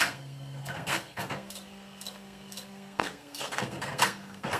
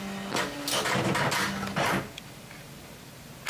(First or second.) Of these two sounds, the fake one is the first